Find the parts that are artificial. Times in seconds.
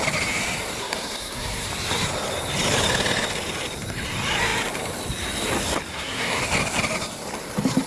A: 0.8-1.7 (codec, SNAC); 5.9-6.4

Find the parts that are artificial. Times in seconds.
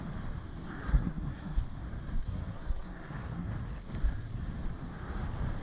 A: 0.8-1.6 (codec, SNAC); 2.2-3.5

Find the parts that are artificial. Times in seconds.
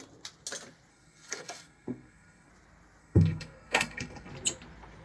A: 0.9-2.5 (codec, SNAC); 3.0-4.3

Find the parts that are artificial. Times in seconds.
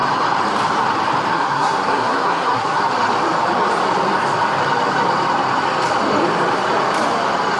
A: 1.3-2.8 (codec, SNAC)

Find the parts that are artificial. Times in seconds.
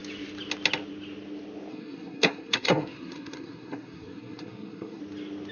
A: 1.7-5.0 (codec, SNAC)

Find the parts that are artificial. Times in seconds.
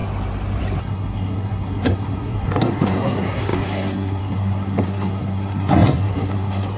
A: 0.8-6.8 (codec, SNAC)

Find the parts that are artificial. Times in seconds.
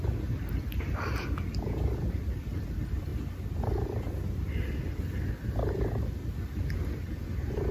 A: none